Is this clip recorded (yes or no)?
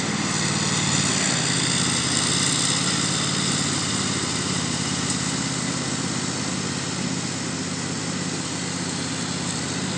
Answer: yes